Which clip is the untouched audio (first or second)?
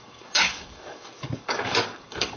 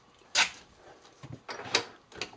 second